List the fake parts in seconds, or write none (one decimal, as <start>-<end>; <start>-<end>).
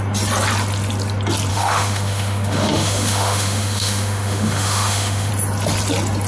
1.5-5.3